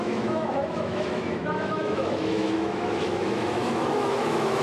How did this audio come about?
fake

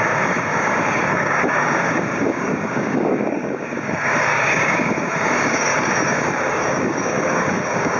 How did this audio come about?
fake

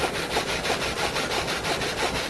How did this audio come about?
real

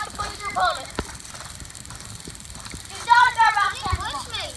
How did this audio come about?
fake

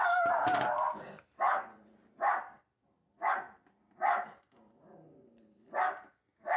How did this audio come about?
real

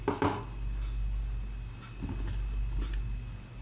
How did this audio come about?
real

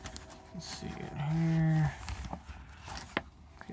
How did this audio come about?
real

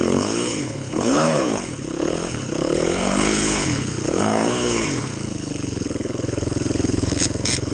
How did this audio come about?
fake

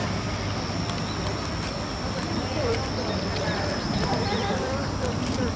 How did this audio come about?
fake